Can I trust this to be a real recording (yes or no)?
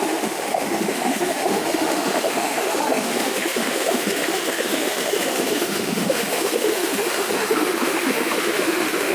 no